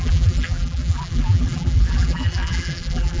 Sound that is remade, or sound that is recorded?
remade